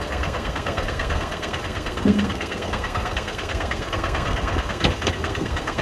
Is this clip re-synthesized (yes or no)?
yes